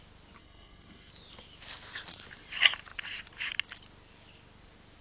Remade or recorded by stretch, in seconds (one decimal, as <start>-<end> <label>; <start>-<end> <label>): 0.0-0.4 recorded; 0.4-1.1 remade; 1.1-5.0 recorded